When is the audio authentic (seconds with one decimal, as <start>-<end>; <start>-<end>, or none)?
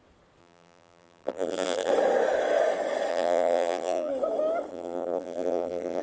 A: 0.0-0.4; 1.9-3.1; 4.1-4.7